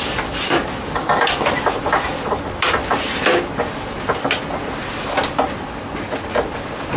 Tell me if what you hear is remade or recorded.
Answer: recorded